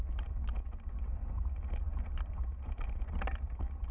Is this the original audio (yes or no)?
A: yes